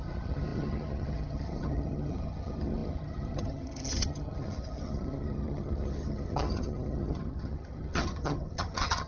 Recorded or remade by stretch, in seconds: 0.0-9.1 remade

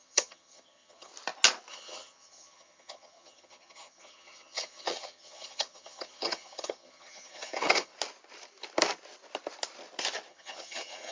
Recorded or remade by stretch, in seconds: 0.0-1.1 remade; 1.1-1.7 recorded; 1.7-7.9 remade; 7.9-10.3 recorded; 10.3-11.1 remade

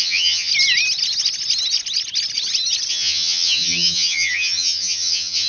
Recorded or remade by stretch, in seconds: 0.0-0.5 remade; 0.5-2.9 recorded; 2.9-5.5 remade